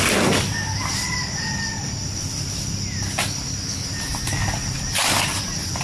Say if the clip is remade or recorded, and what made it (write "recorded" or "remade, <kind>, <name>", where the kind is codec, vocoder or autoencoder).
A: recorded